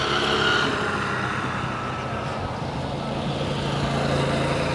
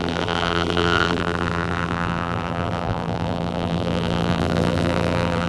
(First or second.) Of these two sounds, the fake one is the second